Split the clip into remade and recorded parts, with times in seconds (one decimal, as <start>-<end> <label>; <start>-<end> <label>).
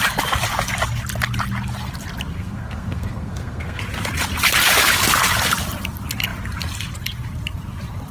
0.0-2.3 recorded; 2.3-3.8 remade; 3.8-8.1 recorded